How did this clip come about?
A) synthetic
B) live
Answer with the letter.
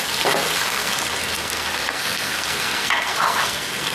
A